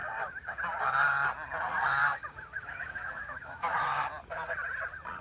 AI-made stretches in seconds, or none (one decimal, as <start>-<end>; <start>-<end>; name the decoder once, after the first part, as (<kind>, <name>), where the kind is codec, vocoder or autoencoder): 2.0-3.8 (autoencoder, DAC-VAE)